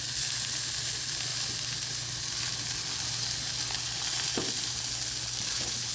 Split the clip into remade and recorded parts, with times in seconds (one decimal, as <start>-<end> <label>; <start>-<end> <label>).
0.0-5.9 recorded